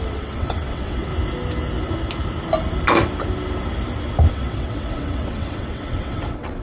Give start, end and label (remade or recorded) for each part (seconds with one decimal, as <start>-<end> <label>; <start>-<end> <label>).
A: 0.0-1.1 remade; 1.1-4.3 recorded; 4.3-6.6 remade